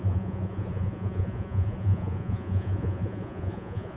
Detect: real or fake fake